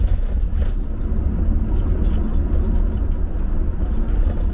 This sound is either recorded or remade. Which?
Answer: recorded